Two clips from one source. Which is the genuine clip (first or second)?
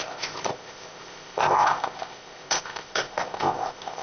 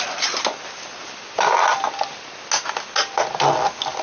second